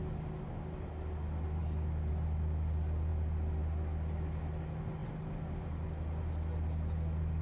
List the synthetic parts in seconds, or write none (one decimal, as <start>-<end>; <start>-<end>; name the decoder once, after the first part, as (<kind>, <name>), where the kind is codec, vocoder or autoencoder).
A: none